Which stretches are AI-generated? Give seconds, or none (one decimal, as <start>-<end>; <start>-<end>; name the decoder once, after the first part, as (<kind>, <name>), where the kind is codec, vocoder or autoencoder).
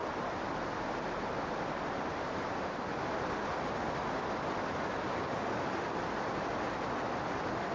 none